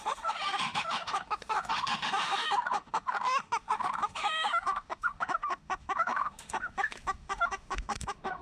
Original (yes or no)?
no